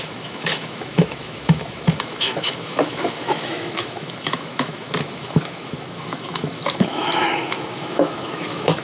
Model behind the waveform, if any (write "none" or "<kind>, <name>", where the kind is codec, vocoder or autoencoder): autoencoder, DAC-VAE